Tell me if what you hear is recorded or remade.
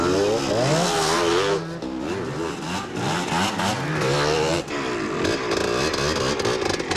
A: recorded